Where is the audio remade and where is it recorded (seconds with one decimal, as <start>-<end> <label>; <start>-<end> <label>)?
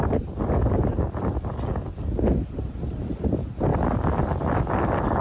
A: 0.0-5.2 recorded